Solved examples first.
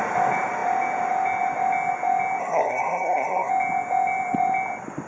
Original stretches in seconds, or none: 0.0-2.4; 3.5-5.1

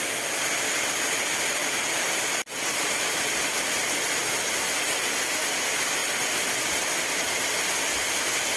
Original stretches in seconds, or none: 0.0-6.0; 7.2-8.6

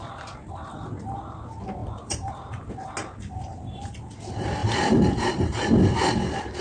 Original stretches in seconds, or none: 0.0-1.8; 2.7-4.6; 5.4-6.6

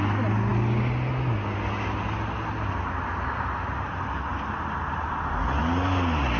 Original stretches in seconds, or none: 0.0-6.4